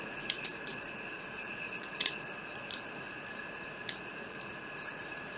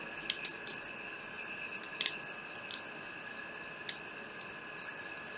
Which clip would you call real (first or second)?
second